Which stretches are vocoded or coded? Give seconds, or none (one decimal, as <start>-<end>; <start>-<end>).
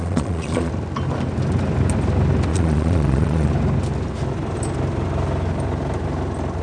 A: 0.0-0.7; 2.5-3.5